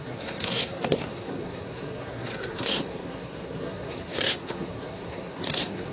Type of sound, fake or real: fake